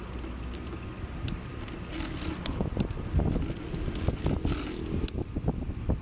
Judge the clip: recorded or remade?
recorded